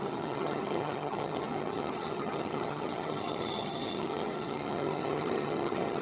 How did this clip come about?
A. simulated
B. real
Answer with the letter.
A